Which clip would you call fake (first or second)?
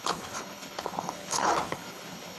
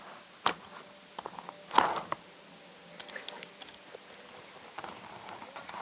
first